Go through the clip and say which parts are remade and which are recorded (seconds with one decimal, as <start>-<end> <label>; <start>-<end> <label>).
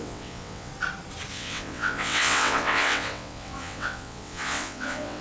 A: 0.0-0.7 remade; 0.7-1.3 recorded; 1.3-5.2 remade